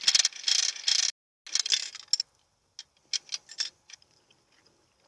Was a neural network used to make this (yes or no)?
no